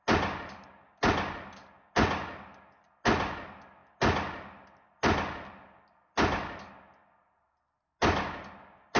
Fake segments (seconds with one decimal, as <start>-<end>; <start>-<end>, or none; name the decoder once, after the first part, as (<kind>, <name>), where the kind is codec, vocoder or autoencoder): none